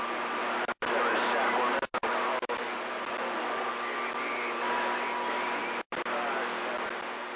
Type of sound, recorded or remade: recorded